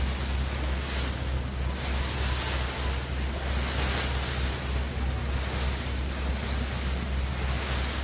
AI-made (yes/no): no